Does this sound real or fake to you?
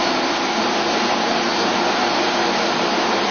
real